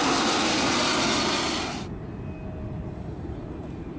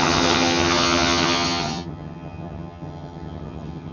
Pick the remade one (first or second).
second